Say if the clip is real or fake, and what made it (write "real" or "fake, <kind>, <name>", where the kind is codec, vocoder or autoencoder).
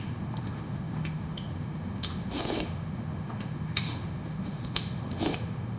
fake, autoencoder, DAC-VAE